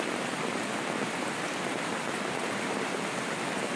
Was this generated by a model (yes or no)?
no